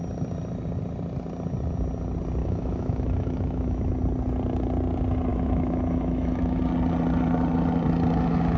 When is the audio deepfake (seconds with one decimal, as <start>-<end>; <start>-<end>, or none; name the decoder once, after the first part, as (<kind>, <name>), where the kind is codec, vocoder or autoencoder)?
2.4-3.9 (autoencoder, DAC-VAE); 5.3-6.6